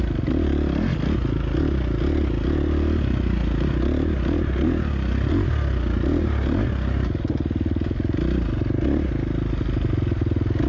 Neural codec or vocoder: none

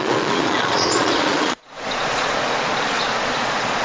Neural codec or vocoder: vocoder, Vocos